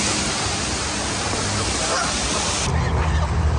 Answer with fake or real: real